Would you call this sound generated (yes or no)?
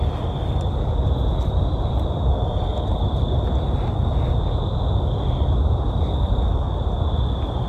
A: no